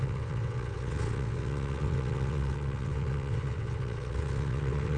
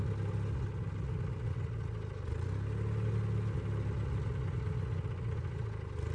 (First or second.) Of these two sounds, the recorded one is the second